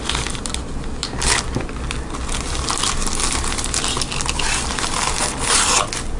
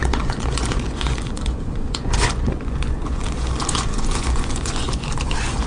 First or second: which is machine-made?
second